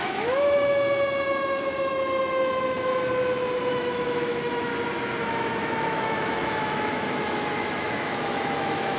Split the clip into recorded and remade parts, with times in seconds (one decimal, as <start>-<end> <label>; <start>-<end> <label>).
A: 0.0-2.9 remade; 2.9-3.7 recorded; 3.7-4.7 remade; 4.7-5.2 recorded; 5.2-9.0 remade